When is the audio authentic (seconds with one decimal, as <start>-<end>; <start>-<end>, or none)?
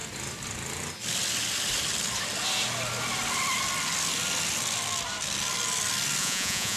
0.0-6.2